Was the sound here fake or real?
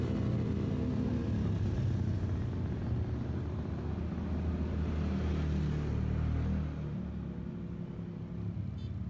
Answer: real